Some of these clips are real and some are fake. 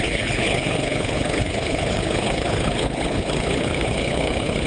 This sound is fake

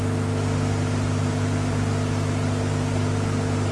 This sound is real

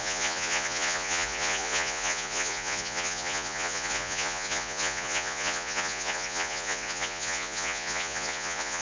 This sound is fake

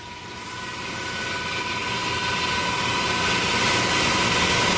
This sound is real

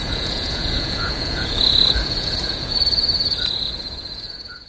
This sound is fake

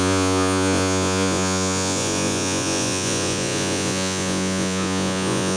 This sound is fake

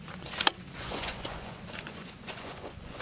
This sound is fake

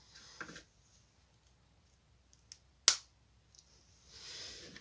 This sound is real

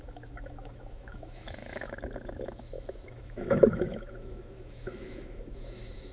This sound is fake